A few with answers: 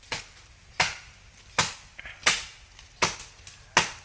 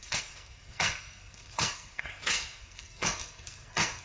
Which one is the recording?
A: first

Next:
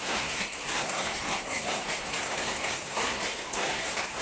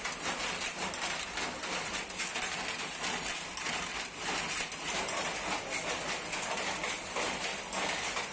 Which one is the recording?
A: second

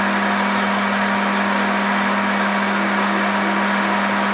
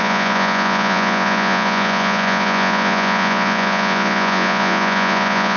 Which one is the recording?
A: first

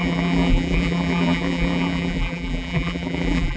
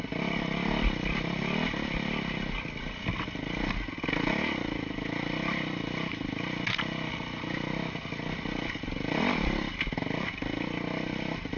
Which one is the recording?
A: second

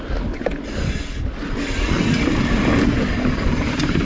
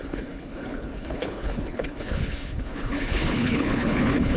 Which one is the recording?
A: first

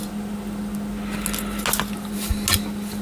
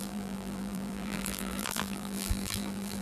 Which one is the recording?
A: first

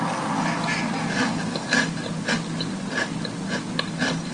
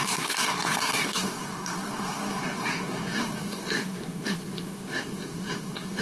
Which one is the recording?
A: first